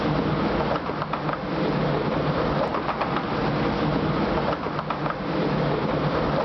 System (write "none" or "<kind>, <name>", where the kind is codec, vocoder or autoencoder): none